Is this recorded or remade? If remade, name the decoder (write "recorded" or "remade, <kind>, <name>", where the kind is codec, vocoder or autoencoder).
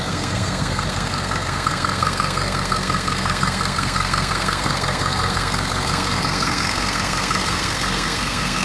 remade, codec, SNAC